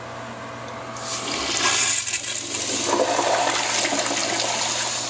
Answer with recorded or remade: recorded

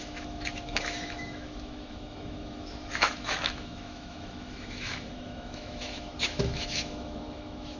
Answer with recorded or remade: remade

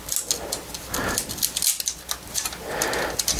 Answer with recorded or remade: recorded